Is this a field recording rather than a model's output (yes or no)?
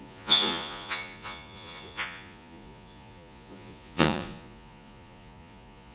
no